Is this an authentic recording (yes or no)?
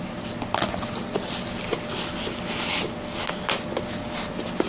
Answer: yes